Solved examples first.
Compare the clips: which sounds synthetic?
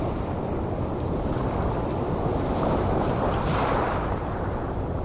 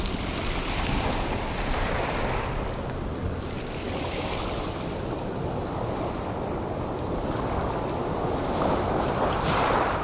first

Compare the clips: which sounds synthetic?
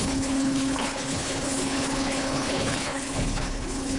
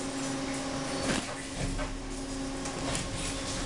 first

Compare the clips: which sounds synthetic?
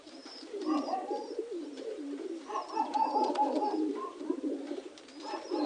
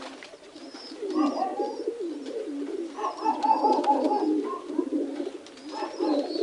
first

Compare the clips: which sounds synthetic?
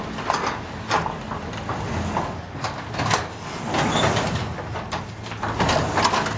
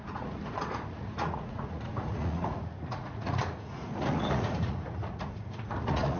second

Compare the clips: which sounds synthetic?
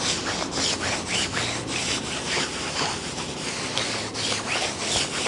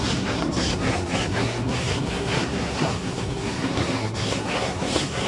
second